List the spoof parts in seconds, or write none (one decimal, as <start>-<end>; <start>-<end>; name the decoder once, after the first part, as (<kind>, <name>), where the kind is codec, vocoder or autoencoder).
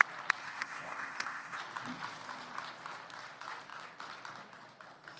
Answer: 0.4-1.6 (codec, ZipCodec)